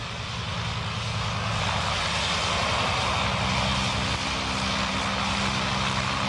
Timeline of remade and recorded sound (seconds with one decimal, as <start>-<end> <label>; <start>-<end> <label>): 0.0-6.3 recorded